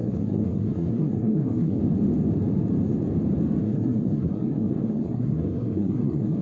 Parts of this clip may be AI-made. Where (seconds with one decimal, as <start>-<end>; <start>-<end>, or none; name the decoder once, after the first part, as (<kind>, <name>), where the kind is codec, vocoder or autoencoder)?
0.0-1.8 (codec, SNAC); 3.6-6.4